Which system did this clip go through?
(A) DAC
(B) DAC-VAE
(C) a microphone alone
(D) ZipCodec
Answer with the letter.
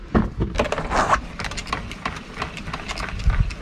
C